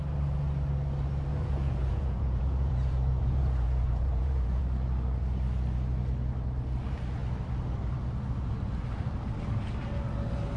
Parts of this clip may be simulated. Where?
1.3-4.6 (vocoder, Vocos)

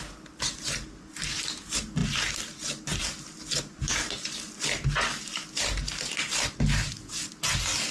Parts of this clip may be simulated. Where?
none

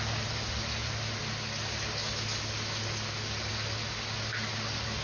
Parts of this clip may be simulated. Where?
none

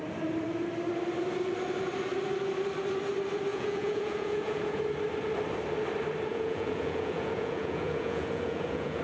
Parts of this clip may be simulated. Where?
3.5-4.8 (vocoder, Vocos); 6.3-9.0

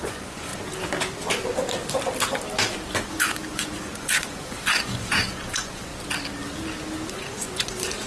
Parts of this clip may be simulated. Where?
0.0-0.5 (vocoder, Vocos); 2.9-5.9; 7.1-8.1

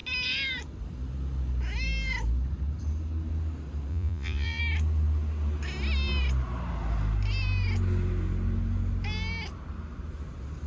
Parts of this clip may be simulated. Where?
3.9-4.6 (vocoder, Vocos)

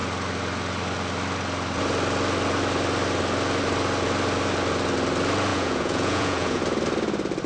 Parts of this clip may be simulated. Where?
5.5-6.6 (vocoder, Vocos)

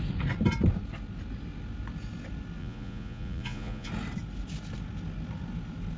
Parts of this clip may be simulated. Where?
2.6-3.9 (vocoder, Vocos)